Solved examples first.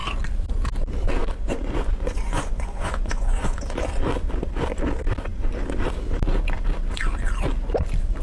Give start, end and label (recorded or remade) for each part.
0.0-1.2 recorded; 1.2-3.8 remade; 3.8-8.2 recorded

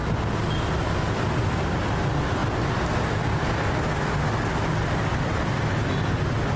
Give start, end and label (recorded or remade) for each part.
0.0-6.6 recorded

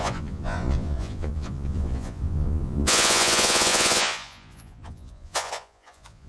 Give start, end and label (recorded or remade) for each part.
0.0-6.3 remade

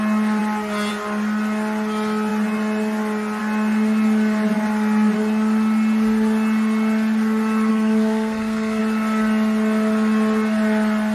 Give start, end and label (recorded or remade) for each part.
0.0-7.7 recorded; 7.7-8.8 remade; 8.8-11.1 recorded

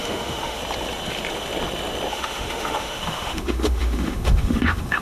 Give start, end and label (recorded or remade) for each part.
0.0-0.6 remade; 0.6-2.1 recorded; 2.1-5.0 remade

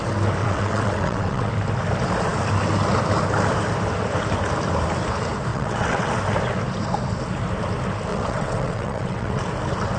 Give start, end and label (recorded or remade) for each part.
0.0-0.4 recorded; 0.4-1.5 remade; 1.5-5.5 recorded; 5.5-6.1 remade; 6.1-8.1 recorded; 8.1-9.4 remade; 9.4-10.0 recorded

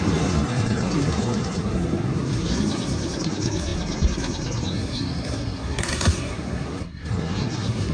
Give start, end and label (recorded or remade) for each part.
0.0-7.9 remade

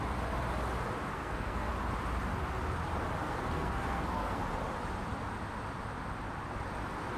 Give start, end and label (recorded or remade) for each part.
0.0-1.1 recorded; 1.1-1.7 remade; 1.7-3.2 recorded; 3.2-4.4 remade; 4.4-7.2 recorded